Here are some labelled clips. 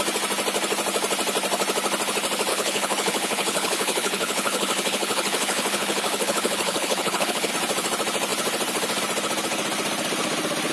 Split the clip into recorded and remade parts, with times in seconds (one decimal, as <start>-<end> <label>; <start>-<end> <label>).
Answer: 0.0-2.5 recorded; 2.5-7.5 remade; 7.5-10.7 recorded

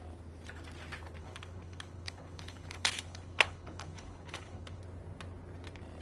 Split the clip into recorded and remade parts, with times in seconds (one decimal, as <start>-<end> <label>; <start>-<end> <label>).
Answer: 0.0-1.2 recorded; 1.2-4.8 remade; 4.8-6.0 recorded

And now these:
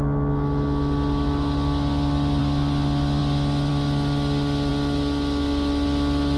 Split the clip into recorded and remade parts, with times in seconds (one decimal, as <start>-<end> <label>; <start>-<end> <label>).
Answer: 0.0-6.4 recorded

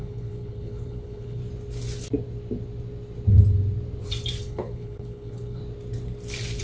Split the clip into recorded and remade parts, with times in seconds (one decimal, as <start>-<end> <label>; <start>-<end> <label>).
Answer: 0.0-1.4 remade; 1.4-4.4 recorded; 4.4-5.6 remade; 5.6-6.6 recorded

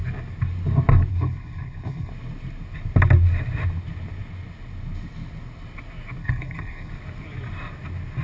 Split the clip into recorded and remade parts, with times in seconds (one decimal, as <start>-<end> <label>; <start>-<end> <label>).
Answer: 0.0-1.1 recorded; 1.1-2.1 remade; 2.1-6.2 recorded; 6.2-6.9 remade; 6.9-8.2 recorded

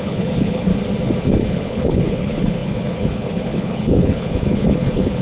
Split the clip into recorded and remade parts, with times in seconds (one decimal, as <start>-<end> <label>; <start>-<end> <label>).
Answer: 0.0-0.7 remade; 0.7-1.4 recorded; 1.4-5.2 remade

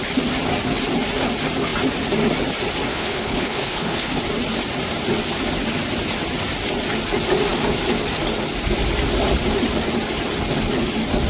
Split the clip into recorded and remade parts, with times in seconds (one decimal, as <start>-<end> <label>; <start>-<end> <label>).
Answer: 0.0-2.9 recorded; 2.9-4.2 remade; 4.2-11.3 recorded

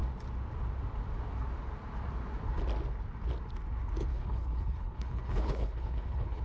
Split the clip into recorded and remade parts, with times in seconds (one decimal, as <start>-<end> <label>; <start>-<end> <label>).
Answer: 0.0-4.1 recorded; 4.1-6.4 remade